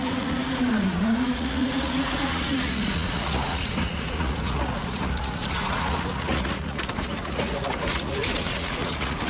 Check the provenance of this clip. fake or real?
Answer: fake